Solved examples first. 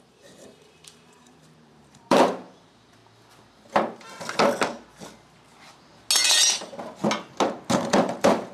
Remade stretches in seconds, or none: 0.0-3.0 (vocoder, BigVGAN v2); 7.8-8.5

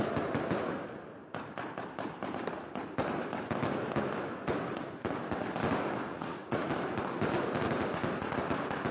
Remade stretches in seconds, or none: 6.1-6.7 (vocoder, Vocos)

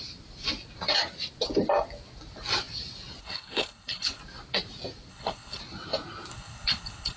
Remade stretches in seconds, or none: 3.2-4.2 (codec, HILCodec); 5.1-5.6; 6.3-7.2

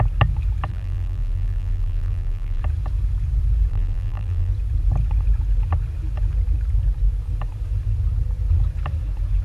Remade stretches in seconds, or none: 0.7-2.6 (vocoder, BigVGAN v2); 3.7-4.5

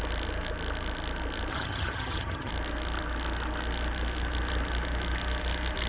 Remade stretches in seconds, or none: 1.5-2.5 (vocoder, HiFi-GAN)

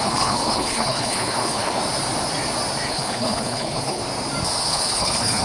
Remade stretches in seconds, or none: 0.0-1.8 (codec, HILCodec); 2.9-4.0; 4.7-5.4

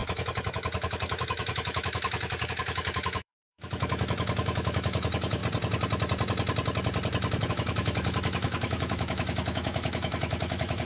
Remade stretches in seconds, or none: 0.0-5.4 (autoencoder, DAC-VAE); 7.5-10.8